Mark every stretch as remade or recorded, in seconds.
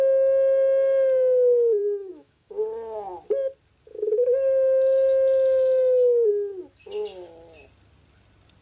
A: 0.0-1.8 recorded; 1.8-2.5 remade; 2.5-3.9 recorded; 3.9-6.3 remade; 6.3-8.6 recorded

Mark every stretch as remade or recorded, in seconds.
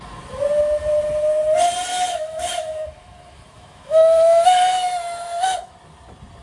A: 0.0-1.9 recorded; 1.9-5.7 remade; 5.7-6.4 recorded